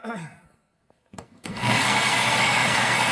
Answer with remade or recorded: remade